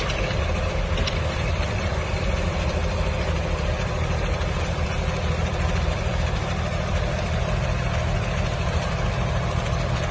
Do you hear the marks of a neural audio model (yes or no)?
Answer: yes